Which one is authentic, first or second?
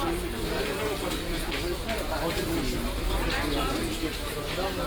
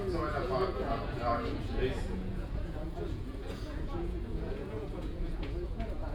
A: first